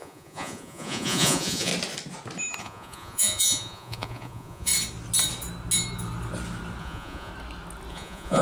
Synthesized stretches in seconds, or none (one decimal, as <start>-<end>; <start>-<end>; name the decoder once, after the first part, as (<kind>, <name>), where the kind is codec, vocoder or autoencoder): 0.0-1.7 (vocoder, Vocos); 2.6-4.7; 6.8-7.3; 7.9-8.4